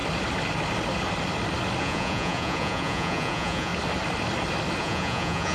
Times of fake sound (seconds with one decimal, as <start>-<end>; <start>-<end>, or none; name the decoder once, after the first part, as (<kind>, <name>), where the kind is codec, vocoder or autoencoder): 1.8-3.7 (vocoder, Vocos); 4.8-5.5